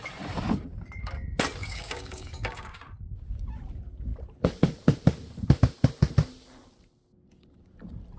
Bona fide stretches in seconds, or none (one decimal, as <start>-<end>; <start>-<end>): 0.0-1.6; 2.8-8.2